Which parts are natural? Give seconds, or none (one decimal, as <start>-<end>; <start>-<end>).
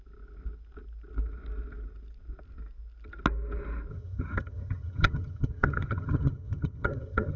0.0-3.9